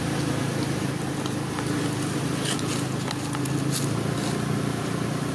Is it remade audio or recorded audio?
recorded